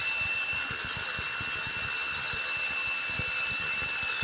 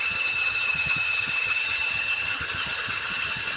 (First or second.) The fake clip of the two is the second